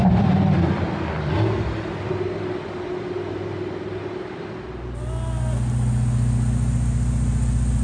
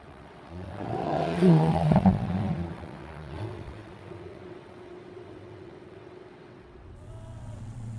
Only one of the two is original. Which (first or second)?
first